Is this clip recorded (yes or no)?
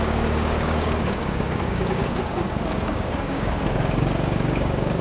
no